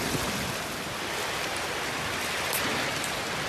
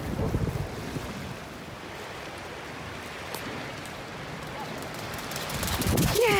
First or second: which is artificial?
second